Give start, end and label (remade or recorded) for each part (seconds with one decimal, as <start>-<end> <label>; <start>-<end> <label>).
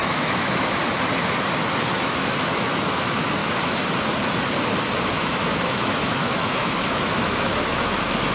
0.0-0.8 remade; 0.8-1.9 recorded; 1.9-3.4 remade; 3.4-5.2 recorded; 5.2-8.3 remade